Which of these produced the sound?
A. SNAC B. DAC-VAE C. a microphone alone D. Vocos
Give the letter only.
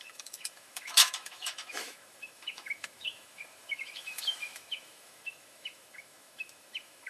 B